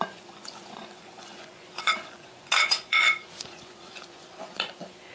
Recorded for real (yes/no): no